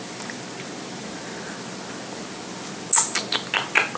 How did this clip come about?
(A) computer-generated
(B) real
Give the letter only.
B